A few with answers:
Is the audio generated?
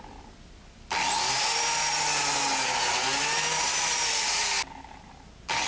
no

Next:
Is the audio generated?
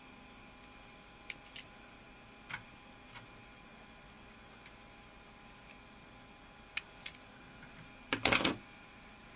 no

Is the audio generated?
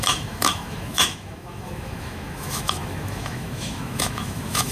yes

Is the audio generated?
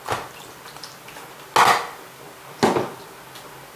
no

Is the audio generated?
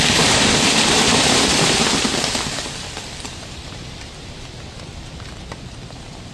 yes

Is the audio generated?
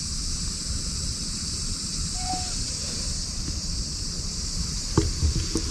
no